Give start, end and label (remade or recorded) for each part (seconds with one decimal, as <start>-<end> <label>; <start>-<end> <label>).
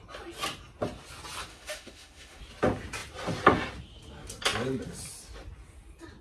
0.0-1.5 recorded; 1.5-2.4 remade; 2.4-6.2 recorded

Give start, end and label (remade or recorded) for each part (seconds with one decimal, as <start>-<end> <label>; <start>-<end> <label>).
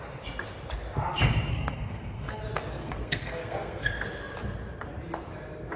0.0-1.5 recorded; 1.5-2.4 remade; 2.4-2.8 recorded; 2.8-3.9 remade; 3.9-5.8 recorded